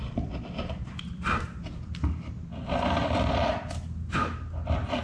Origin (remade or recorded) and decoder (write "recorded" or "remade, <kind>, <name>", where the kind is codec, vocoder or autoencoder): recorded